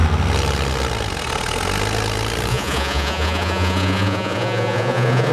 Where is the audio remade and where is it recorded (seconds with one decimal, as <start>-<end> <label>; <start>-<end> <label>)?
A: 0.0-2.5 recorded; 2.5-5.3 remade